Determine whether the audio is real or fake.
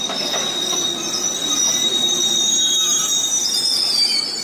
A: real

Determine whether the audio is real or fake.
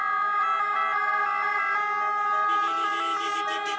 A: real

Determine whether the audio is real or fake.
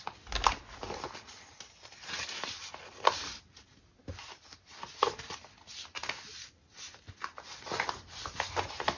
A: real